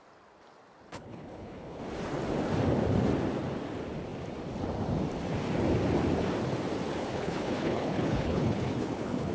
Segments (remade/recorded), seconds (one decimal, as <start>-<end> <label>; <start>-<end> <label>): 0.0-0.9 recorded; 0.9-1.8 remade; 1.8-7.1 recorded; 7.1-9.3 remade